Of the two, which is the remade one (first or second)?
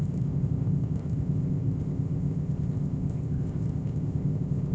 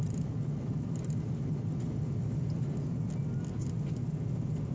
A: first